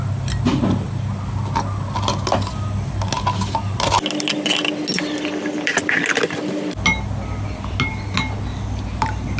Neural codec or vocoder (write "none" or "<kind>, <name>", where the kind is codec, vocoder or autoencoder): none